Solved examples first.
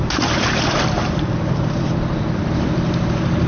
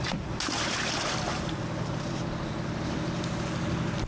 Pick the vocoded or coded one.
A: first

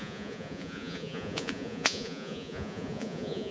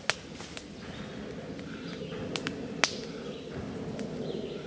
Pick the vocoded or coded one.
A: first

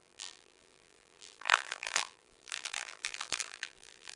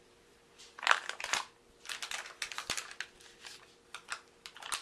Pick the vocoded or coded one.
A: first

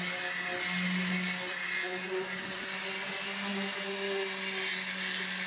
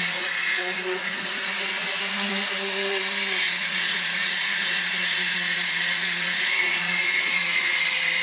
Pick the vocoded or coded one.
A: second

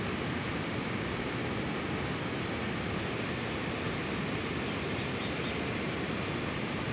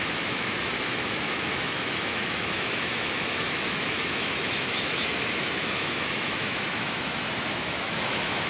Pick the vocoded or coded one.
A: second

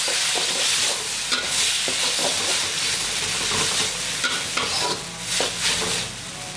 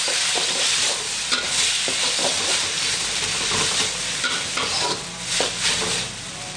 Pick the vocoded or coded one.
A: second